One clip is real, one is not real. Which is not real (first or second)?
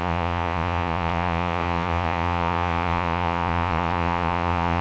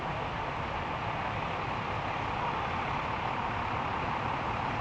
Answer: first